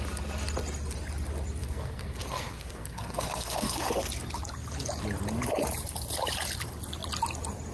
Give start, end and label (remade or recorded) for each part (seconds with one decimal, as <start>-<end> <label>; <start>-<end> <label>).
0.0-1.6 recorded; 1.6-4.0 remade; 4.0-7.7 recorded